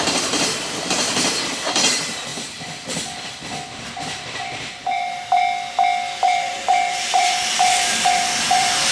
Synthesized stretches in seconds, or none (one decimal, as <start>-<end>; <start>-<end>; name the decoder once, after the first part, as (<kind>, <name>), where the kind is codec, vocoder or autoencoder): 0.0-2.3 (vocoder, BigVGAN v2); 4.0-5.4; 6.2-8.9

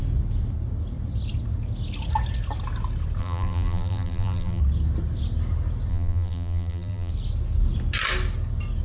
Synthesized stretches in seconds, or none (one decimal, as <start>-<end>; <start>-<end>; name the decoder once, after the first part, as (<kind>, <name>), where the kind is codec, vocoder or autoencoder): 3.2-4.6 (vocoder, BigVGAN v2); 5.9-7.1

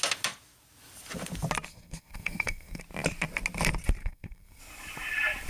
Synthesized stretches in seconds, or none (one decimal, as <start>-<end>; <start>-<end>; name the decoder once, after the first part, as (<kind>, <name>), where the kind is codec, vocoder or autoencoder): 1.7-2.8 (codec, SNAC); 4.0-4.6